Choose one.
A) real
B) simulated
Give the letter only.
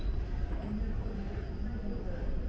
A